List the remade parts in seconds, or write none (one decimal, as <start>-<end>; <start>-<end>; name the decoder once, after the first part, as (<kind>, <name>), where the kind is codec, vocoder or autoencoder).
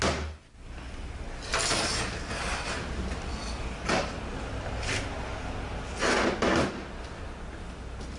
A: 1.5-4.2 (vocoder, BigVGAN v2)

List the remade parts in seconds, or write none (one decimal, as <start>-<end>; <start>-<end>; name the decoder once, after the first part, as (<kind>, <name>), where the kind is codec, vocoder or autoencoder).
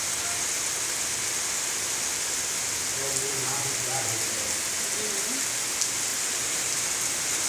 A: 6.1-6.7 (vocoder, BigVGAN v2)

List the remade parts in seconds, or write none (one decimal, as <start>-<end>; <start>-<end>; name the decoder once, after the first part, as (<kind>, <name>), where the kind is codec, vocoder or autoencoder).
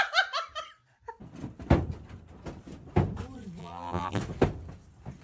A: 3.6-4.2 (vocoder, BigVGAN v2)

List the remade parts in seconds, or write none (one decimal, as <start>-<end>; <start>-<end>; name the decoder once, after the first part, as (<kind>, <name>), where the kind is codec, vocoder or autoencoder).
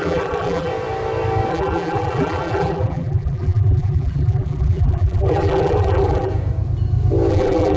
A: 0.0-0.7 (vocoder, BigVGAN v2); 1.5-6.3; 7.3-7.8